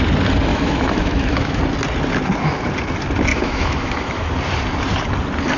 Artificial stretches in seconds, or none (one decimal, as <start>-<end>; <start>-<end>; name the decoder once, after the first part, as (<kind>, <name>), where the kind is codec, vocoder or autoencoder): 0.5-1.6 (autoencoder, DAC-VAE); 3.3-4.3